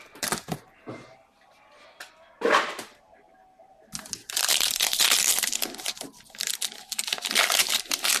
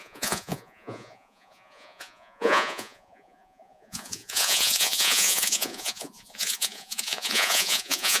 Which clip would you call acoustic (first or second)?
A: first